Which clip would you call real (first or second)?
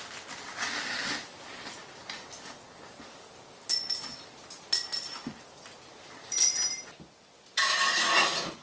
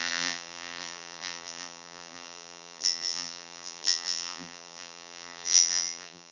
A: first